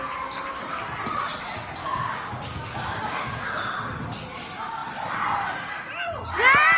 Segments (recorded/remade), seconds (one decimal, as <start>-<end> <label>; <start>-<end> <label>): 0.0-1.8 recorded; 1.8-3.4 remade; 3.4-6.8 recorded